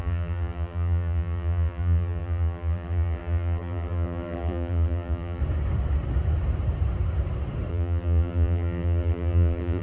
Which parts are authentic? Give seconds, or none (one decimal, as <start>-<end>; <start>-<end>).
5.4-7.7